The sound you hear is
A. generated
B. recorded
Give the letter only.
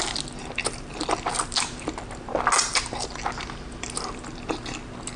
B